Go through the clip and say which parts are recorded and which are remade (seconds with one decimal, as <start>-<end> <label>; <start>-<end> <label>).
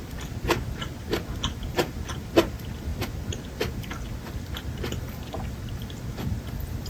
0.0-6.9 recorded